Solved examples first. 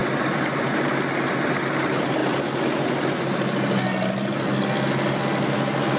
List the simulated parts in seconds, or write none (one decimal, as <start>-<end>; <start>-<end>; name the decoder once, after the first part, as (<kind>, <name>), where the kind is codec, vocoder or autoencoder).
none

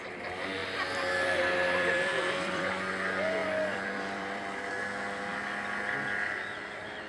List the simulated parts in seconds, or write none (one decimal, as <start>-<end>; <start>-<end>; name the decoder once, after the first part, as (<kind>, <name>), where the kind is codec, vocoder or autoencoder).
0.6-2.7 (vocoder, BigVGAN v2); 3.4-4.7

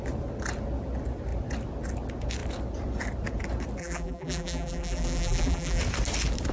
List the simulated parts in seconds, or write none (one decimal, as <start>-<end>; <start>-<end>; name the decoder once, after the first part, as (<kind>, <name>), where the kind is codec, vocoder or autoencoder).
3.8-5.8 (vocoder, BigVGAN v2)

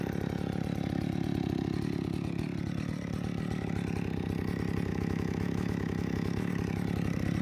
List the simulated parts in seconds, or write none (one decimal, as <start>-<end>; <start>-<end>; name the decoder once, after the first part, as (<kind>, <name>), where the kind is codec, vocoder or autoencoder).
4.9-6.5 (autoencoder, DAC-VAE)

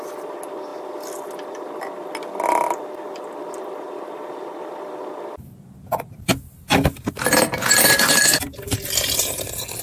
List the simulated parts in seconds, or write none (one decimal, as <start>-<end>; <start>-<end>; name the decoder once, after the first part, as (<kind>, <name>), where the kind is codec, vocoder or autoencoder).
none

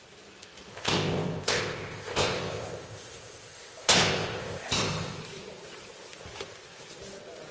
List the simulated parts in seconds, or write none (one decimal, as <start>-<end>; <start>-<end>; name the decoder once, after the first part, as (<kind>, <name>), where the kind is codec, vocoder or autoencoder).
0.7-5.2 (codec, ZipCodec)